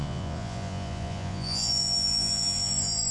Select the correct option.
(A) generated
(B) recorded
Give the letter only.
A